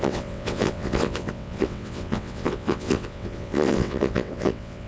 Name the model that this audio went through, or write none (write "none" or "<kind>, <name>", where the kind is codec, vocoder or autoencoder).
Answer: vocoder, WaveNeXt